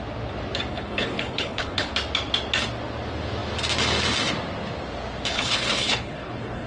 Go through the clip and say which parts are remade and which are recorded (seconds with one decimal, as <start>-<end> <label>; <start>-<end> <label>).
0.0-0.7 recorded; 0.7-1.9 remade; 1.9-5.3 recorded; 5.3-6.7 remade